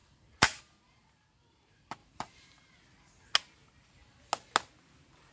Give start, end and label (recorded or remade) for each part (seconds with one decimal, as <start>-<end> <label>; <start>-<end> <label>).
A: 0.0-0.6 remade; 0.6-2.0 recorded; 2.0-2.8 remade; 2.8-5.3 recorded

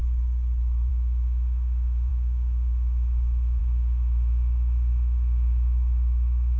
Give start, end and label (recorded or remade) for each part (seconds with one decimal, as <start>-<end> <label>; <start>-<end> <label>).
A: 0.0-0.9 recorded; 0.9-6.6 remade

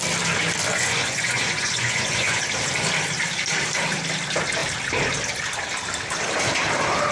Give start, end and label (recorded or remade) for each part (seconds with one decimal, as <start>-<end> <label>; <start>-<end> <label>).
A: 0.0-0.7 recorded; 0.7-2.4 remade; 2.4-7.1 recorded

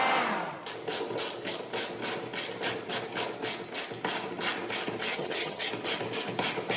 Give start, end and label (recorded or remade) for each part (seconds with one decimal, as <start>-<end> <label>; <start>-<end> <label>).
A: 0.0-5.1 recorded; 5.1-5.7 remade; 5.7-6.8 recorded